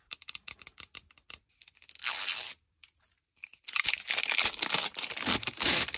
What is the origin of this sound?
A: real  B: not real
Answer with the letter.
A